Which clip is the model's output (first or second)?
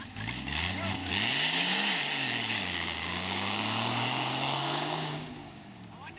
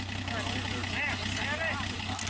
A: first